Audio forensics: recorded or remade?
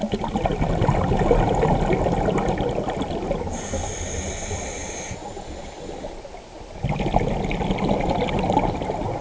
recorded